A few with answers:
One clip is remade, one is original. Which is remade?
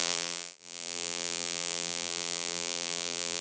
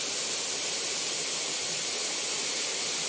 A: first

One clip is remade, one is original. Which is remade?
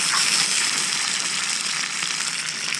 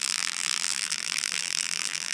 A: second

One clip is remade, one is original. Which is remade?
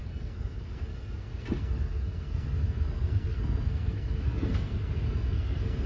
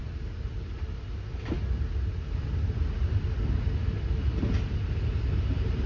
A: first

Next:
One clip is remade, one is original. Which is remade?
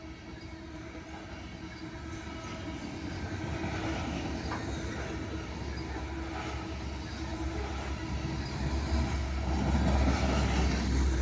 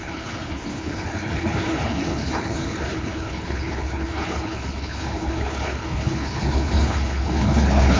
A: second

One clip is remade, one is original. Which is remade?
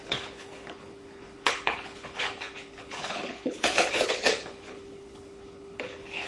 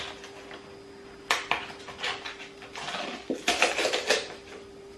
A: first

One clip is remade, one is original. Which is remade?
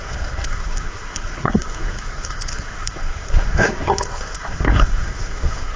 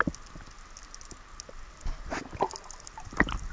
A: first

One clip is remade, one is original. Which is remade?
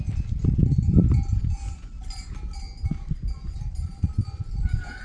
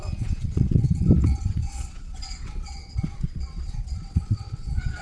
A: second